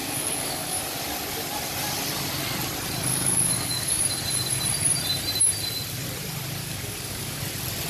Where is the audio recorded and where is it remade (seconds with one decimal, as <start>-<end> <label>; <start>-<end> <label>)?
0.0-0.8 remade; 0.8-3.1 recorded; 3.1-4.0 remade; 4.0-6.6 recorded; 6.6-7.4 remade; 7.4-7.9 recorded